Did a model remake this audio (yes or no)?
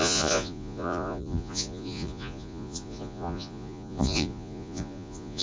yes